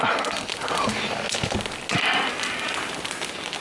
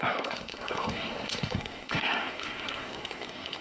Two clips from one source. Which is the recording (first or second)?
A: first